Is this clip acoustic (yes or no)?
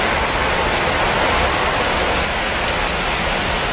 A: yes